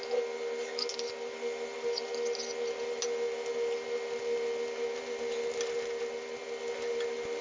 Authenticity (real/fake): real